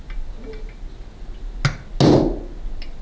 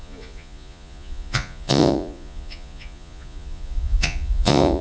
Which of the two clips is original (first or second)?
first